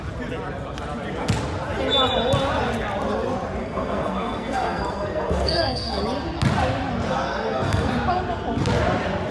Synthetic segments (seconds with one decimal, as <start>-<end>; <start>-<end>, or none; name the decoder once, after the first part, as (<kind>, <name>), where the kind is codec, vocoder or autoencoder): 3.6-6.0 (codec, SNAC); 7.1-7.9